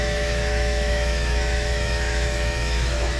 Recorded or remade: remade